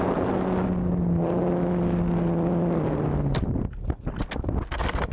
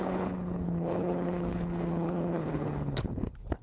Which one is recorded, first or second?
first